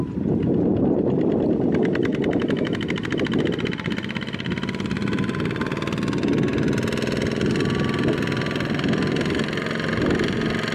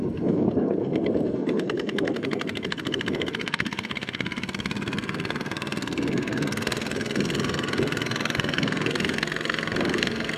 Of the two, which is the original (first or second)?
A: first